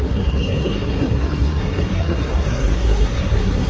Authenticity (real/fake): fake